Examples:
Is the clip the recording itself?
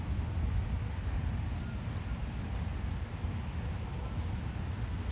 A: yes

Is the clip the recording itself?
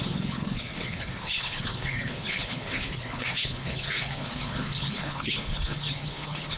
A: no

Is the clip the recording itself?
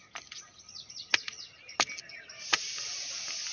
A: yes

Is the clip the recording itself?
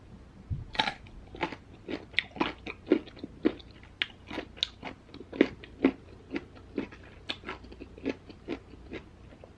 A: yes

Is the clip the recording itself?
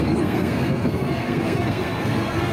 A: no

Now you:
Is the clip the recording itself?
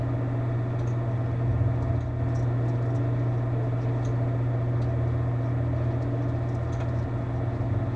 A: yes